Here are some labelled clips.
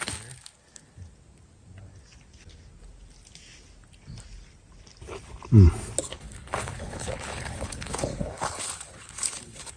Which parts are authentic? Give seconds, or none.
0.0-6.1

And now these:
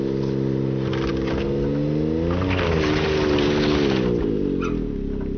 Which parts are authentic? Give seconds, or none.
0.0-5.4